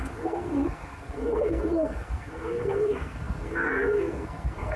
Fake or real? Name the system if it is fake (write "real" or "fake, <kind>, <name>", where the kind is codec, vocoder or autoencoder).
fake, codec, SNAC